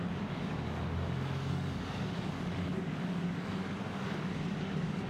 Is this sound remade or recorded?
remade